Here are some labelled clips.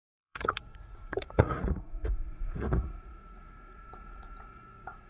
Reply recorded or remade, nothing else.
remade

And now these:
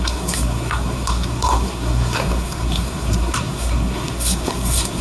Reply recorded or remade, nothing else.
remade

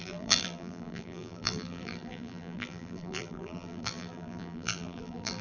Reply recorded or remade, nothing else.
remade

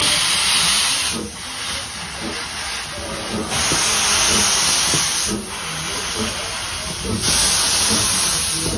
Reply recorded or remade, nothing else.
recorded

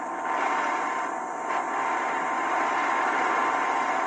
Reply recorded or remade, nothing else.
recorded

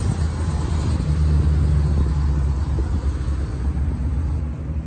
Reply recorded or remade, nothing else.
recorded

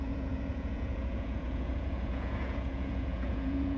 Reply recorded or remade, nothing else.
remade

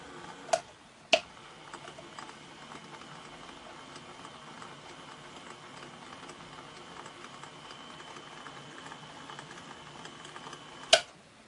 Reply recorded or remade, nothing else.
recorded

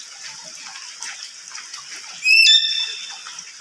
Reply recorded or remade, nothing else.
recorded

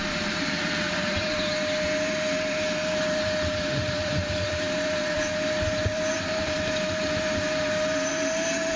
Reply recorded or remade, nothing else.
remade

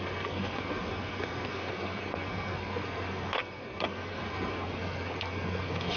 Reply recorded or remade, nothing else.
remade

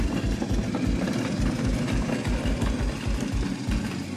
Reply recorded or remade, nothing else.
recorded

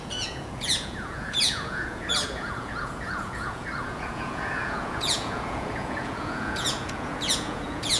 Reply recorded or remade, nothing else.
remade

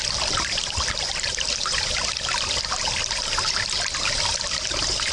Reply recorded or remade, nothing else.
recorded